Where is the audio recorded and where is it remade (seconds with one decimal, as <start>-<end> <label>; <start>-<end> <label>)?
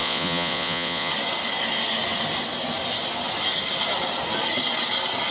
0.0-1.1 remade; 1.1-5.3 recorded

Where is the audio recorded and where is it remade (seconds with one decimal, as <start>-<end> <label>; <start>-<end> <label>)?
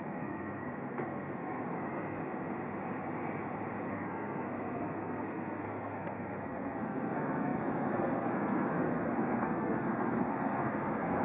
0.0-2.2 remade; 2.2-3.9 recorded; 3.9-11.2 remade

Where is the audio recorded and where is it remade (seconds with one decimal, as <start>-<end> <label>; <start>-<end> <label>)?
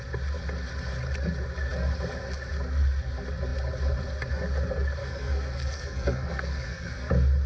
0.0-5.0 recorded; 5.0-7.1 remade; 7.1-7.5 recorded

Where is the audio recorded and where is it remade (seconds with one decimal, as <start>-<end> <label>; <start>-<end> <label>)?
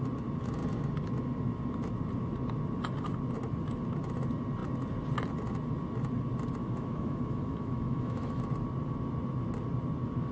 0.0-6.6 recorded; 6.6-8.4 remade; 8.4-10.3 recorded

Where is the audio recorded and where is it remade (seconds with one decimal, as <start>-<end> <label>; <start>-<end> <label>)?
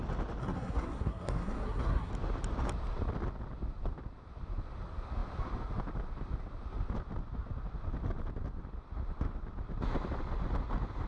0.0-0.4 recorded; 0.4-2.1 remade; 2.1-11.1 recorded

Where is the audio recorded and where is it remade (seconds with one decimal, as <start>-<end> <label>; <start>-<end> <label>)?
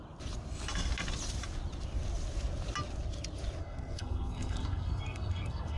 0.0-3.6 recorded; 3.6-5.8 remade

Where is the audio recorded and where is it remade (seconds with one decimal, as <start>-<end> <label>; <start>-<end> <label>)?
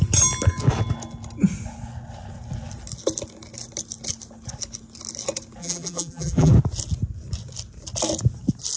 0.0-5.6 recorded; 5.6-6.5 remade; 6.5-8.8 recorded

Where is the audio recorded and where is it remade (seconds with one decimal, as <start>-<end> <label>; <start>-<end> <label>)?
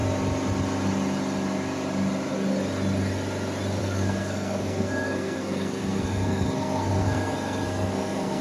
0.0-3.8 recorded; 3.8-8.4 remade